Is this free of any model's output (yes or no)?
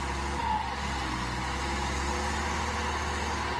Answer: yes